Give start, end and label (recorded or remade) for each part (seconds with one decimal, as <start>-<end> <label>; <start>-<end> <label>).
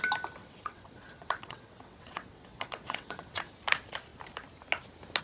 0.0-0.4 recorded; 0.4-3.5 remade; 3.5-5.2 recorded